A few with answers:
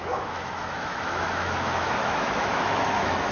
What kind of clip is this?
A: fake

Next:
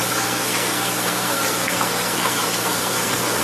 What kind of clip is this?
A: fake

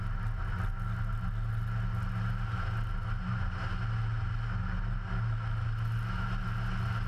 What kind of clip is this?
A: real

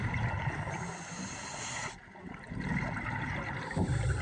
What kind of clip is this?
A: real